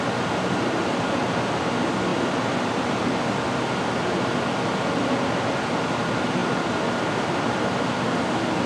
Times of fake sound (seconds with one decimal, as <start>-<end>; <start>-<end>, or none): none